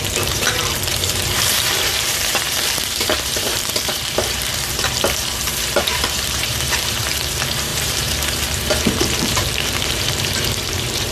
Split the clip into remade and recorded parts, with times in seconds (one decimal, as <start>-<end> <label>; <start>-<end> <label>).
0.0-11.1 remade